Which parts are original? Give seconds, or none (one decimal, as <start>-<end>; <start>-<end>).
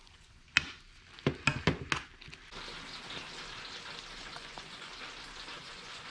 0.5-4.2; 4.9-5.6